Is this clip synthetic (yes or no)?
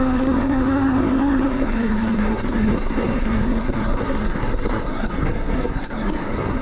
yes